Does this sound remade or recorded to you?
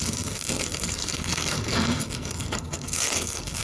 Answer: remade